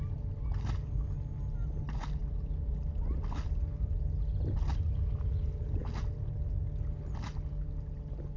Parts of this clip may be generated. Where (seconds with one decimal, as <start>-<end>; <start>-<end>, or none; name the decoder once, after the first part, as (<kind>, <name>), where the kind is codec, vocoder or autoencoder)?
none